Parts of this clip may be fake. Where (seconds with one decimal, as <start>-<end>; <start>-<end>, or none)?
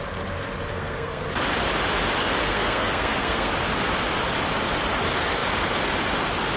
0.7-1.3; 2.4-3.5